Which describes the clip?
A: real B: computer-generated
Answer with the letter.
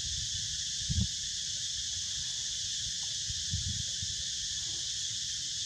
A